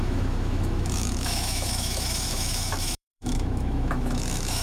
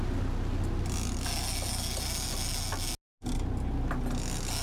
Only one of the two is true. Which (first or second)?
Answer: second